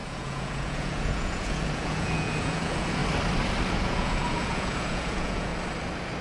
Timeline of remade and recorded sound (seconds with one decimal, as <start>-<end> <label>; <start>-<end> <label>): 0.0-3.0 remade; 3.0-3.7 recorded; 3.7-5.5 remade; 5.5-6.2 recorded